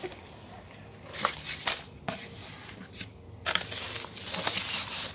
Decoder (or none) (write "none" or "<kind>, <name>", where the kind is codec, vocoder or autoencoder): none